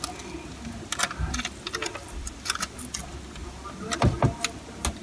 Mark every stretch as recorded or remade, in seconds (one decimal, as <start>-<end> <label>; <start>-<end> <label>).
0.0-1.8 recorded; 1.8-2.8 remade; 2.8-3.4 recorded; 3.4-4.4 remade; 4.4-5.0 recorded